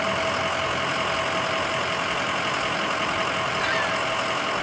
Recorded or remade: recorded